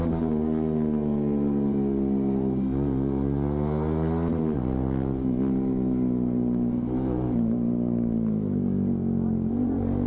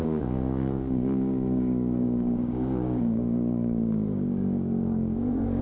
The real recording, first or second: first